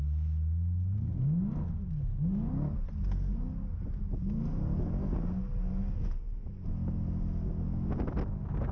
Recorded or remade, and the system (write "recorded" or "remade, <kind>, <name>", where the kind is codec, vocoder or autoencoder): recorded